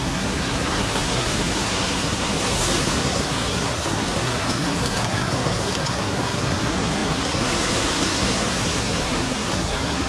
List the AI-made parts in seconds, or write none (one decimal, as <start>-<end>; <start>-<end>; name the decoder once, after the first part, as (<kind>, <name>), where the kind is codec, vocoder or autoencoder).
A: 0.0-10.1 (codec, SNAC)

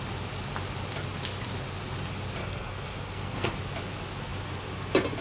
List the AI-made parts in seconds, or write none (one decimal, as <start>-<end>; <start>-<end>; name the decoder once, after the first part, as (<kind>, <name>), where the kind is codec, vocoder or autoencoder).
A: 2.4-3.6 (codec, SNAC)